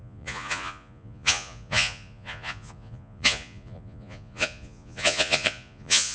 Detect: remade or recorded remade